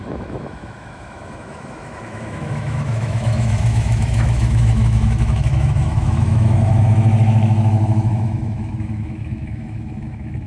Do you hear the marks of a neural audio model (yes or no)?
yes